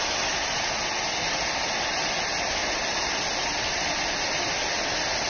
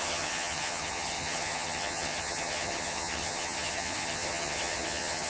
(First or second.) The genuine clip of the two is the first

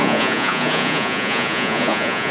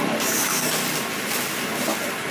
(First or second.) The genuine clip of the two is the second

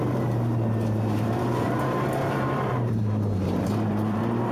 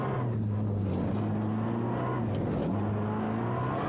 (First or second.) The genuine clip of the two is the second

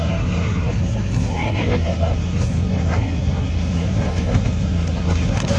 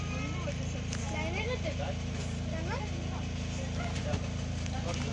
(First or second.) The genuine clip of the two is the second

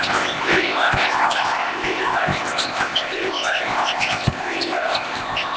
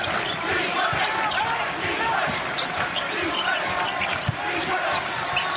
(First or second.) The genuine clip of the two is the second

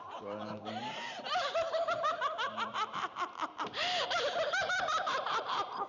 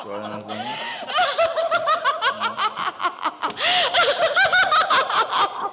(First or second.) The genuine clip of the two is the second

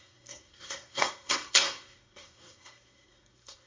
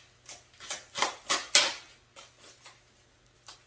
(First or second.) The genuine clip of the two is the second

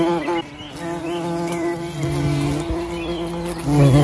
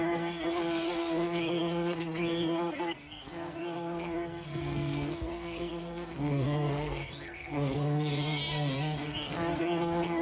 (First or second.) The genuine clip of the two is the first